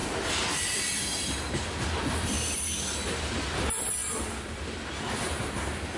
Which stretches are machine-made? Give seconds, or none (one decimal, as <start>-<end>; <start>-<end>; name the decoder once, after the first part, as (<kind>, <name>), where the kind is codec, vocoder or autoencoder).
none